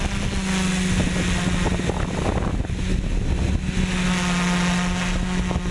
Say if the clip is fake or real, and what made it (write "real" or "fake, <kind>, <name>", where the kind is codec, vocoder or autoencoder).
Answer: real